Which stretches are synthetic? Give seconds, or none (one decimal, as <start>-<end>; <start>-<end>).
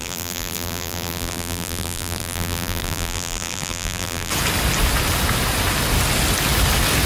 0.0-4.3